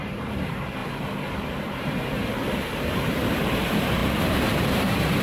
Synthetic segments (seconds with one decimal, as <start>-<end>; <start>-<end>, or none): 0.0-0.8; 1.5-2.2; 2.7-5.2